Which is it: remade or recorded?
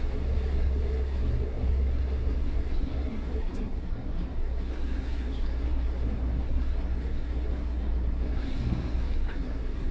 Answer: remade